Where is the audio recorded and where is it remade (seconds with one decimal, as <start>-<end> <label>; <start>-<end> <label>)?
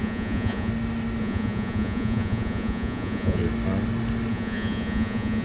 0.0-0.7 remade; 0.7-1.2 recorded; 1.2-3.4 remade; 3.4-4.3 recorded; 4.3-5.4 remade